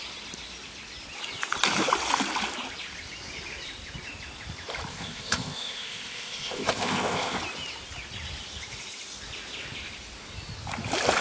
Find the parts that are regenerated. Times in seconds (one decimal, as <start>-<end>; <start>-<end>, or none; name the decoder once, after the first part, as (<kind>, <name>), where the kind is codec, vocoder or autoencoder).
4.9-7.4 (codec, ZipCodec)